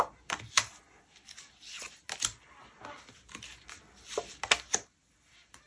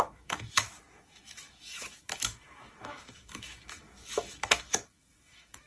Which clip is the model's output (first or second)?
second